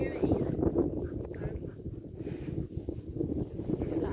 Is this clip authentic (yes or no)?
yes